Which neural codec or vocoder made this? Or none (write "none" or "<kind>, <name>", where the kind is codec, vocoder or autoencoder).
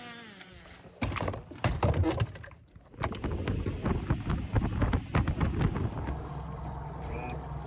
none